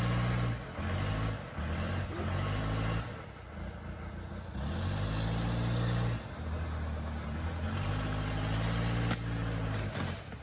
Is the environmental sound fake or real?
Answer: real